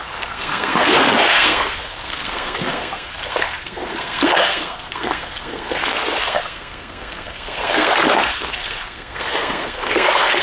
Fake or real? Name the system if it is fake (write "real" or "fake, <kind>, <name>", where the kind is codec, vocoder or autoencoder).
fake, codec, SNAC